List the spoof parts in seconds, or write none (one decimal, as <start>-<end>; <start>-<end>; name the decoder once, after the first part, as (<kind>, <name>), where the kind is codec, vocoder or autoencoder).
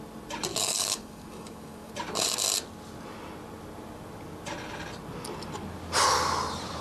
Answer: 0.5-1.9 (codec, DAC)